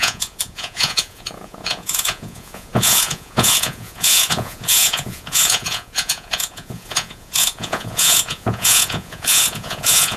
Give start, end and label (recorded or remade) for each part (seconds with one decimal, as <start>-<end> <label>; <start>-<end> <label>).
0.0-10.2 remade